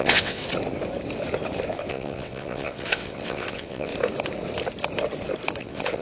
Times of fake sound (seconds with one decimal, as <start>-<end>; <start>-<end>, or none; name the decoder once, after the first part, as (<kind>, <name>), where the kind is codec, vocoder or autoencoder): 0.0-0.4 (vocoder, WaveNeXt); 1.9-3.9; 5.6-6.0

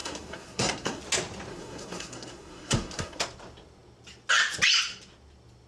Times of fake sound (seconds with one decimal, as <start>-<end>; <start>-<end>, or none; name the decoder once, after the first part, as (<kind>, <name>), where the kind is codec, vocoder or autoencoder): 0.0-1.0 (codec, SNAC); 1.5-3.2

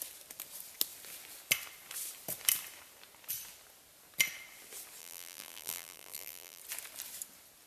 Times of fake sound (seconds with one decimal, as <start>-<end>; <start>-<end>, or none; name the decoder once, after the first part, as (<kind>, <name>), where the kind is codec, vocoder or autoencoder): 5.0-6.6 (vocoder, BigVGAN v2)

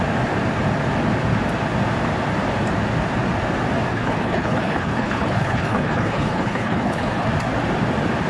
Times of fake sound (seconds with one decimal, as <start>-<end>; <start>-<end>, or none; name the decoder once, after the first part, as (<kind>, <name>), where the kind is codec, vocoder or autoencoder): 3.9-7.3 (codec, HILCodec)